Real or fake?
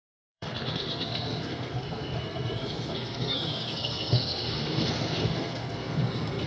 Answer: fake